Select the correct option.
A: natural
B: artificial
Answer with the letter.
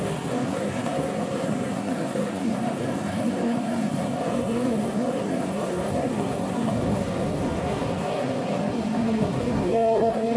B